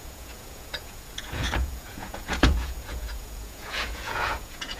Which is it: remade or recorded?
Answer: remade